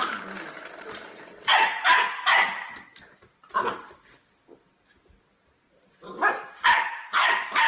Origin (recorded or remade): recorded